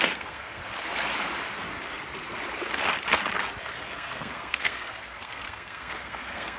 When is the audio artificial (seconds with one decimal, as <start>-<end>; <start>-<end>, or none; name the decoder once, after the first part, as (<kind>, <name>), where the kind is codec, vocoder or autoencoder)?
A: 0.0-0.6 (codec, SNAC); 3.6-6.6